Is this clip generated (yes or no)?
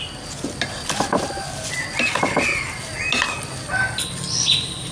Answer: no